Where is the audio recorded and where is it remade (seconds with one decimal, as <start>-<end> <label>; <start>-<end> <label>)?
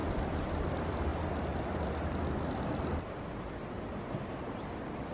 0.0-1.1 remade; 1.1-4.2 recorded; 4.2-5.1 remade